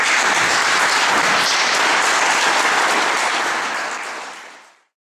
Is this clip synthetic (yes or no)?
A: no